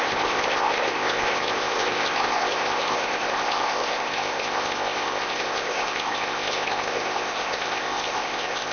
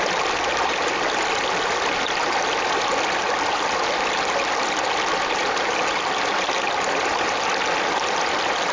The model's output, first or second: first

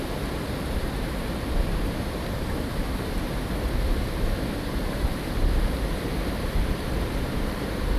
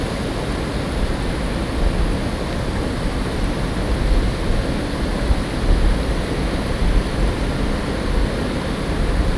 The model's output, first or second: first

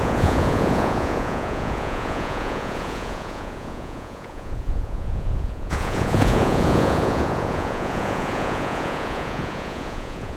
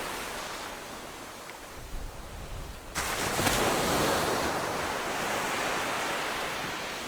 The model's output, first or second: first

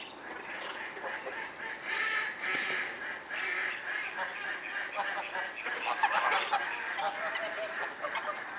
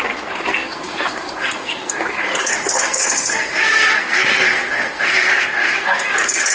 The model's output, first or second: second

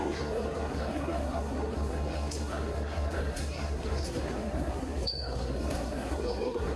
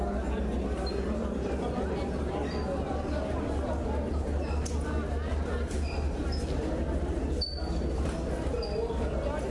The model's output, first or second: first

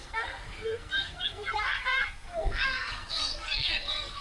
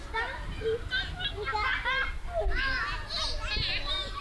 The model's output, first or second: first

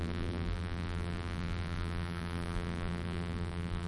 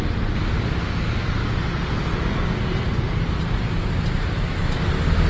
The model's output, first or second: first